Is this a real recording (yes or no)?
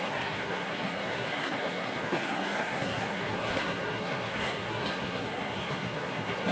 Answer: no